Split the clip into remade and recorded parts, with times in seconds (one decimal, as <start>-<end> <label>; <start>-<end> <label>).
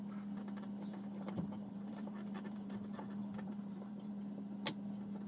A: 0.0-0.9 recorded; 0.9-4.1 remade; 4.1-5.3 recorded